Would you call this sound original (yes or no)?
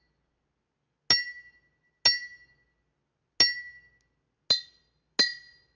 yes